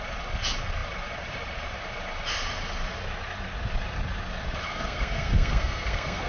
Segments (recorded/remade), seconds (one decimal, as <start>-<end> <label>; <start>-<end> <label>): 0.0-4.7 recorded; 4.7-6.3 remade

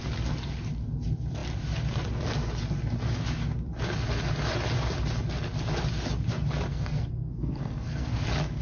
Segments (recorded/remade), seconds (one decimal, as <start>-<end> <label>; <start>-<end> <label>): 0.0-6.7 recorded; 6.7-8.1 remade; 8.1-8.6 recorded